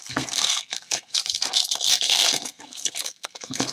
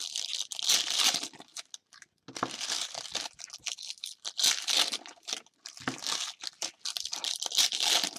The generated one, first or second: first